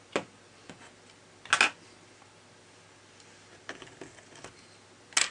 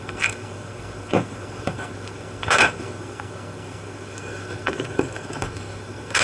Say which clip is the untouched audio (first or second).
first